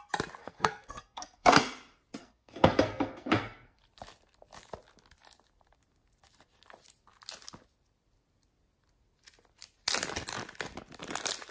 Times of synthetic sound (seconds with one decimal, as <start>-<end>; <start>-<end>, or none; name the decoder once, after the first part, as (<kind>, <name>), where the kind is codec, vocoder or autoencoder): 0.4-1.6 (codec, SNAC); 2.2-3.8